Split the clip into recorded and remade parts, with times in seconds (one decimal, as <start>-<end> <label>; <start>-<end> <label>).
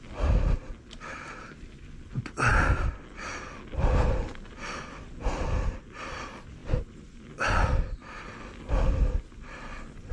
0.0-10.1 recorded